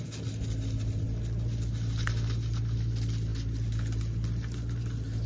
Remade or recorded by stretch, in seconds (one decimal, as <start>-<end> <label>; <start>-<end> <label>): 0.0-5.3 recorded